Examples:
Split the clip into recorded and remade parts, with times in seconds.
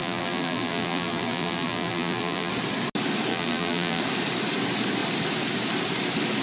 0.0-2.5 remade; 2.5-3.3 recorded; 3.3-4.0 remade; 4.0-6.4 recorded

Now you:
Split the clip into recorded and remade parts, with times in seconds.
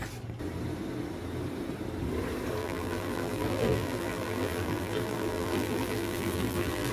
0.0-2.6 recorded; 2.6-6.9 remade